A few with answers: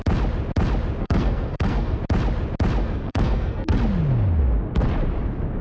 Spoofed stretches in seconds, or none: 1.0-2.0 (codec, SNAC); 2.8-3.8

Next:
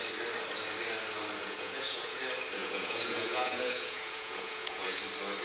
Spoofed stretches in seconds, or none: 1.4-2.2 (vocoder, Vocos); 2.6-5.0

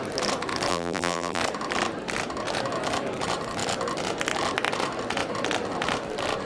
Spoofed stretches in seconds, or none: 0.7-1.4 (vocoder, BigVGAN v2)